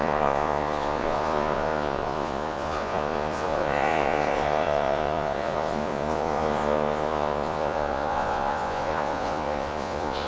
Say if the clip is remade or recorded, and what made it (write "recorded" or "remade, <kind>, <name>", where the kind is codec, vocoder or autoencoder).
remade, vocoder, Vocos